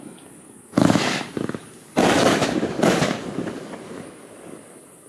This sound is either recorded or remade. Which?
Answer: remade